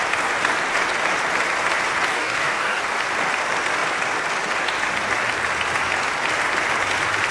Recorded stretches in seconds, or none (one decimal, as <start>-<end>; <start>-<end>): 0.0-2.1; 2.8-7.3